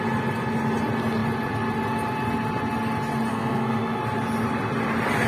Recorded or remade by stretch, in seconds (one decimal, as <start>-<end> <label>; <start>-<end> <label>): 0.0-3.3 recorded; 3.3-4.0 remade; 4.0-5.3 recorded